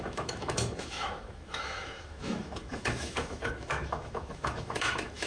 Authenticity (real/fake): fake